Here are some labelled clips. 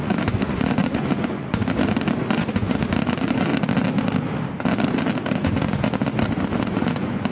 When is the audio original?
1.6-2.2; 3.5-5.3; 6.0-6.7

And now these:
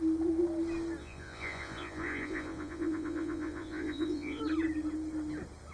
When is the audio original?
0.0-1.0; 4.4-5.7

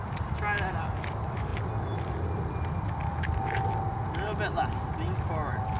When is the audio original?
0.0-5.8

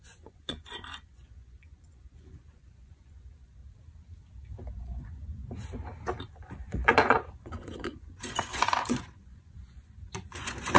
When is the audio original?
3.6-4.7; 5.4-6.3

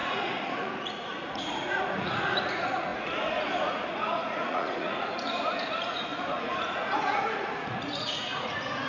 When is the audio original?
none

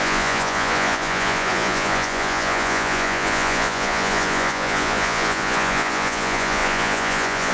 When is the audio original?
none

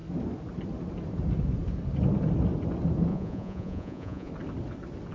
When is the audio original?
0.0-3.1; 4.3-5.1

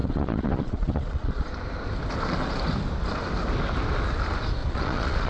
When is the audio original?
1.5-4.6